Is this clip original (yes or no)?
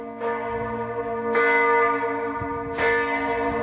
yes